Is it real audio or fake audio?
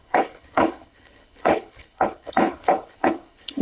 fake